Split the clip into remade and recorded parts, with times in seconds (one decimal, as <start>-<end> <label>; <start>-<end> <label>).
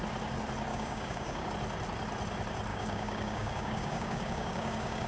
0.0-0.7 recorded; 0.7-1.5 remade; 1.5-2.7 recorded; 2.7-5.1 remade